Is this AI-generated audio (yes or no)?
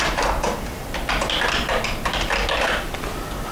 yes